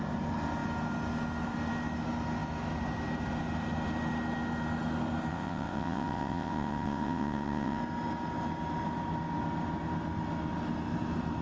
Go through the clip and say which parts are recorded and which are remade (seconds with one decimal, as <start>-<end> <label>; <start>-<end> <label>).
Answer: 0.0-5.3 recorded; 5.3-7.8 remade; 7.8-11.4 recorded